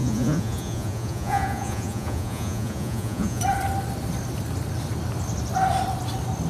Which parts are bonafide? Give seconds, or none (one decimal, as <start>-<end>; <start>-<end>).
3.4-6.5